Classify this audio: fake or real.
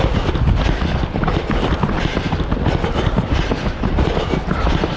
real